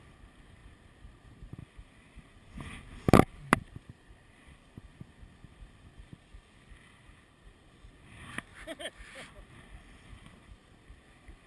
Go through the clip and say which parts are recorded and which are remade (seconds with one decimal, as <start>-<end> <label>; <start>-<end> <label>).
0.0-3.3 recorded; 3.3-4.8 remade; 4.8-11.5 recorded